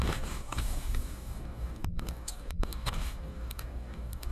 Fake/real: fake